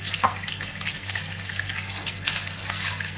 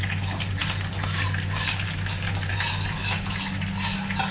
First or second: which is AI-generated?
first